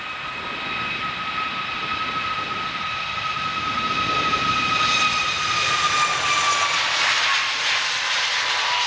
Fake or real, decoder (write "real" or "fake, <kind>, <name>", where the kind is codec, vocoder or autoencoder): real